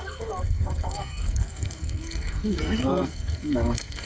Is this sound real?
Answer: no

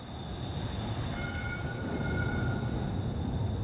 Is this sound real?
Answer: yes